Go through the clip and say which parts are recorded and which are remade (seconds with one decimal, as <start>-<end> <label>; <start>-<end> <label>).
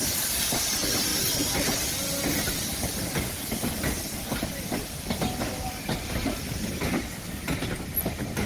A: 0.0-8.5 recorded